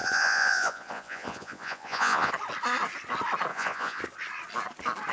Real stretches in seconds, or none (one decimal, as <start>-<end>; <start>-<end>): 2.3-3.5; 4.0-5.1

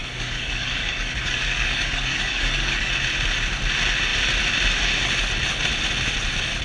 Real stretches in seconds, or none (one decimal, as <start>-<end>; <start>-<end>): 2.9-6.6

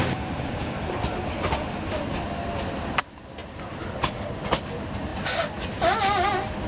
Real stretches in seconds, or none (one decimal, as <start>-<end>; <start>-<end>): 0.8-6.7

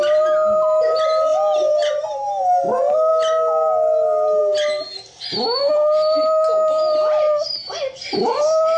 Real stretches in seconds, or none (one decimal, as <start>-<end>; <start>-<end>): 0.0-8.8

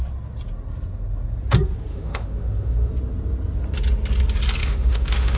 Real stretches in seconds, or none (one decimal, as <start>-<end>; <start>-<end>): 0.0-1.9; 2.9-4.6